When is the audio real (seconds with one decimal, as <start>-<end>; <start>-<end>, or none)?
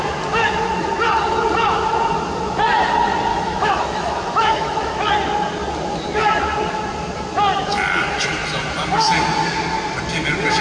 0.0-3.3; 5.0-10.6